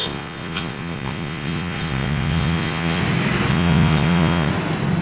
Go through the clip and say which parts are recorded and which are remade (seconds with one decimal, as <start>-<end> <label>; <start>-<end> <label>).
0.0-3.0 remade; 3.0-3.5 recorded; 3.5-4.5 remade; 4.5-5.0 recorded